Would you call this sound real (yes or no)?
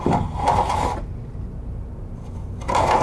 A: yes